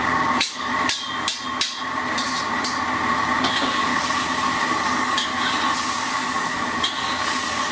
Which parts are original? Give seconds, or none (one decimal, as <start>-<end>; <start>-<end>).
0.7-3.5; 3.9-4.6; 5.3-6.0